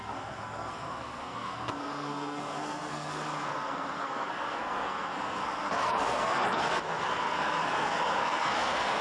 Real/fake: fake